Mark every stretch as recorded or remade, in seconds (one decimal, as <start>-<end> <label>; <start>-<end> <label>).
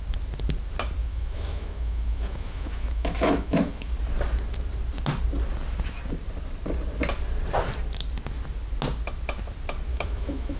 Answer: 0.0-1.0 recorded; 1.0-3.9 remade; 3.9-9.9 recorded; 9.9-10.6 remade